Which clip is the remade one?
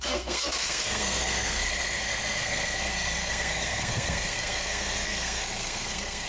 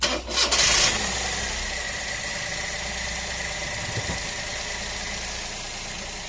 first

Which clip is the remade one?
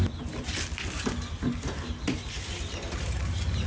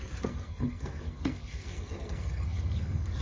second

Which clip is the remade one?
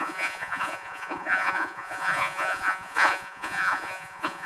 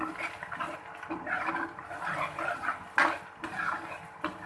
first